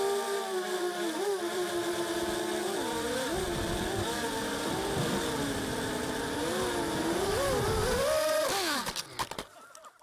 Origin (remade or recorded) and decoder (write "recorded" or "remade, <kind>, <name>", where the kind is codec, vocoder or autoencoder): remade, vocoder, BigVGAN v2